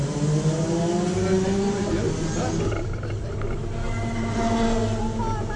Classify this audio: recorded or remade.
recorded